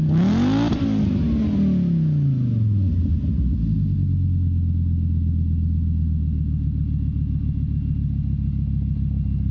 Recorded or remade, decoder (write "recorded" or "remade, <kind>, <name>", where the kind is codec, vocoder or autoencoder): recorded